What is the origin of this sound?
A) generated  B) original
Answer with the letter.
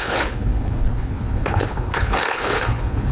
A